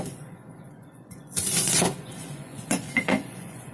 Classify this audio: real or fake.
fake